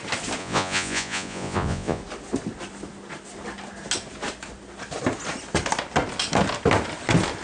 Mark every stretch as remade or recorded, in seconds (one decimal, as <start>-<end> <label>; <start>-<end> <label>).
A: 0.0-0.4 recorded; 0.4-2.0 remade; 2.0-7.4 recorded